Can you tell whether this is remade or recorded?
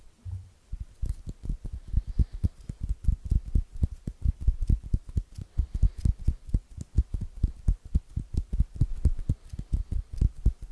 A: remade